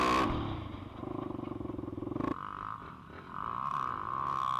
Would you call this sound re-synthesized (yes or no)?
no